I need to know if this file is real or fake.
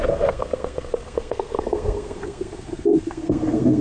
fake